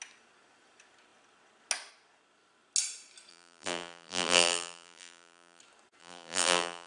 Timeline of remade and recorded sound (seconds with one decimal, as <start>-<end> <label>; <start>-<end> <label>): 0.0-3.3 recorded; 3.3-5.6 remade; 5.6-6.0 recorded; 6.0-6.9 remade